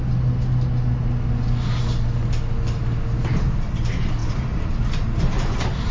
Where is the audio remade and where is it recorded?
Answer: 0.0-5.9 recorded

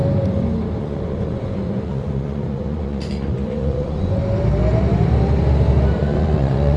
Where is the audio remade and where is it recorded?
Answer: 0.0-0.8 recorded; 0.8-4.2 remade; 4.2-6.0 recorded; 6.0-6.8 remade

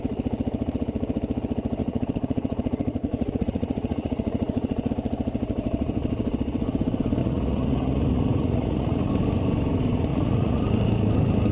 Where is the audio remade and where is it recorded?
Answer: 0.0-1.8 recorded; 1.8-4.9 remade; 4.9-7.2 recorded; 7.2-9.1 remade; 9.1-10.1 recorded; 10.1-10.6 remade; 10.6-11.5 recorded